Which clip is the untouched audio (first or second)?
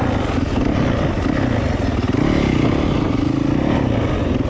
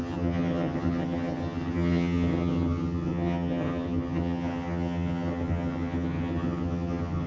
first